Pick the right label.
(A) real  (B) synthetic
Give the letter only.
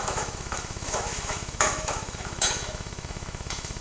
B